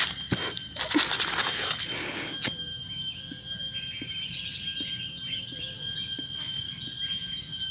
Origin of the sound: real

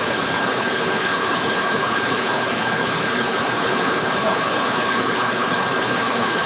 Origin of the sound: fake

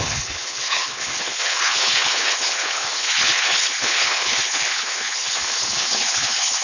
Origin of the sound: fake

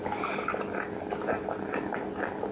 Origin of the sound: real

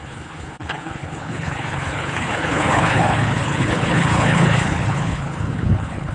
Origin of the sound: fake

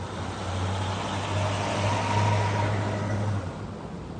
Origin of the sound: real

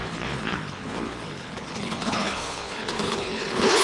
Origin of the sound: fake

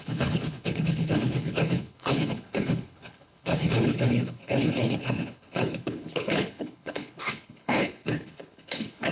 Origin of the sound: fake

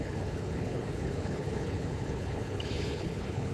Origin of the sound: fake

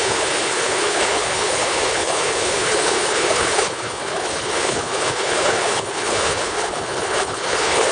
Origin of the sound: fake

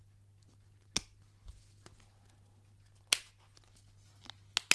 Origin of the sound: real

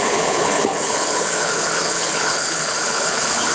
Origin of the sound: fake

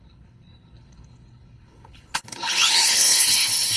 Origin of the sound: fake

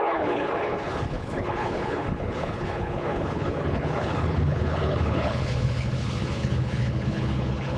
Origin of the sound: fake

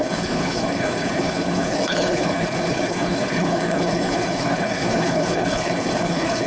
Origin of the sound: fake